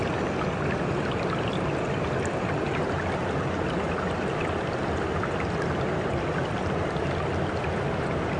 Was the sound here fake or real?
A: real